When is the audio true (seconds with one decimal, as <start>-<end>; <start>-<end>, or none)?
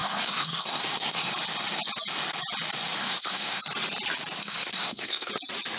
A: 1.3-3.0; 3.6-4.4; 5.3-5.8